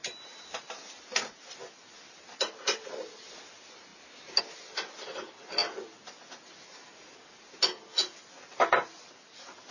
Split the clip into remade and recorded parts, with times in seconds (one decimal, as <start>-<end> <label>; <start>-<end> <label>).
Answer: 0.0-9.7 recorded